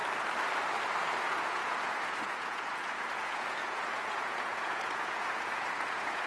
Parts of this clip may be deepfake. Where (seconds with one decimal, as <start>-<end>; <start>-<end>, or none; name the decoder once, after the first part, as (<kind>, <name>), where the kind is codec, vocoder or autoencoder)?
1.0-6.3 (vocoder, Vocos)